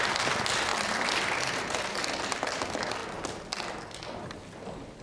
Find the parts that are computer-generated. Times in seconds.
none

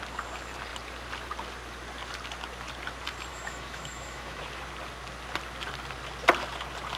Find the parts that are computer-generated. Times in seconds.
3.3-4.4 (autoencoder, DAC-VAE)

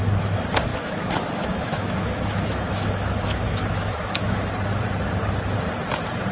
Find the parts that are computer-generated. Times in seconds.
0.7-4.5 (autoencoder, DAC-VAE)

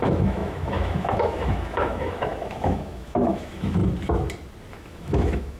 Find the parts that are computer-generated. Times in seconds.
0.0-3.8 (autoencoder, DAC-VAE); 4.7-5.6